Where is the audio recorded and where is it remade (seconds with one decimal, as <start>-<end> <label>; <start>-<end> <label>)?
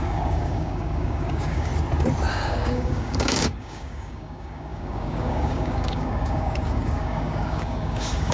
0.0-1.7 remade; 1.7-2.3 recorded; 2.3-8.3 remade